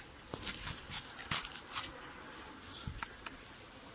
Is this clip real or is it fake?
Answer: real